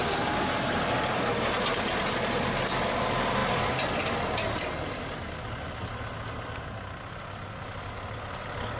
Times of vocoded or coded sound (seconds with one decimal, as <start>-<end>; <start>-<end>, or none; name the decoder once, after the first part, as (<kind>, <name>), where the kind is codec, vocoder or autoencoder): none